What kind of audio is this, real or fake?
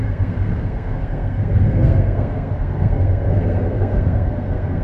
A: fake